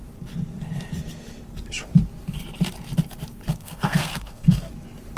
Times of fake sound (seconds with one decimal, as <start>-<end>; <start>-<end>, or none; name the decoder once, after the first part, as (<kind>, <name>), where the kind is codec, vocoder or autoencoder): 3.5-4.7 (codec, SNAC)